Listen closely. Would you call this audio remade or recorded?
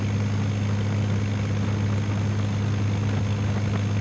recorded